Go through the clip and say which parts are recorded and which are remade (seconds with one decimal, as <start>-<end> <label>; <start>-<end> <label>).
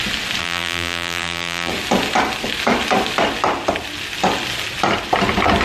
0.0-0.4 recorded; 0.4-1.7 remade; 1.7-5.6 recorded